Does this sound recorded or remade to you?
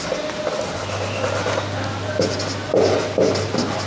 recorded